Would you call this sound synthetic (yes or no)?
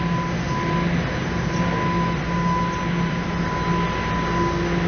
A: no